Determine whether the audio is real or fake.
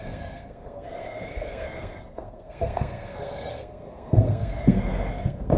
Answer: fake